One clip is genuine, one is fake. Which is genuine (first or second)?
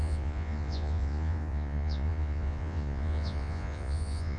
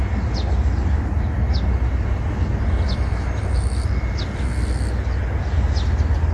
second